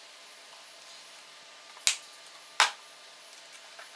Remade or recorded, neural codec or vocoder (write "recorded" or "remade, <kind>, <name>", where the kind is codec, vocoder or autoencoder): recorded